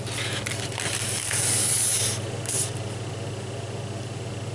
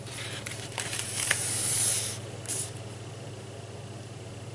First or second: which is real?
first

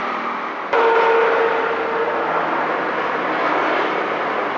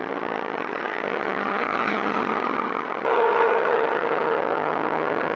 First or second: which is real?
first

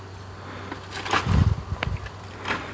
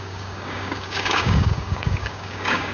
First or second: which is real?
first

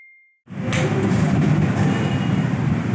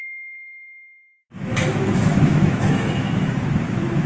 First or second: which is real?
first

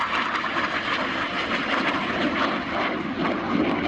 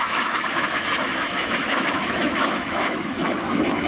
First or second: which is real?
first